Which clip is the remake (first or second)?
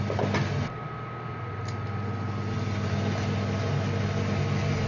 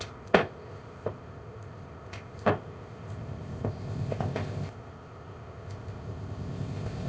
second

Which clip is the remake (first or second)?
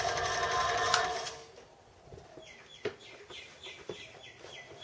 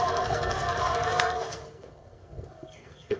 second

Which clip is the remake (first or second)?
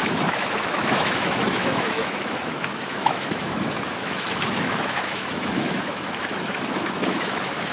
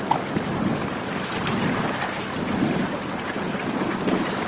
first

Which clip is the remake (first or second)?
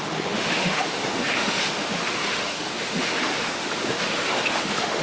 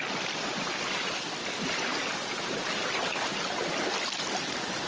first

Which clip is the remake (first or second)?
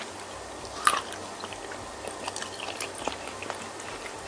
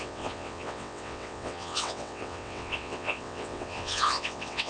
second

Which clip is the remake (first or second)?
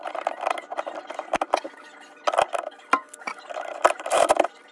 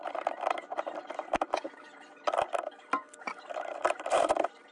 second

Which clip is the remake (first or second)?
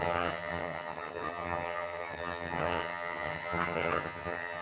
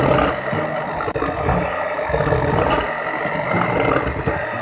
first